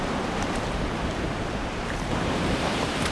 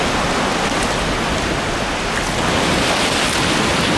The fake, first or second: first